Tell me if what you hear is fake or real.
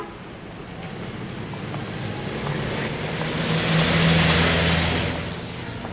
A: real